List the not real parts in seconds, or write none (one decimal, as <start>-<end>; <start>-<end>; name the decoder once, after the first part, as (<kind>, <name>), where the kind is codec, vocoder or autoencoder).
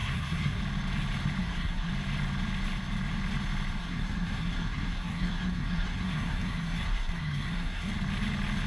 0.0-0.6 (codec, SNAC); 1.4-1.9; 3.8-7.9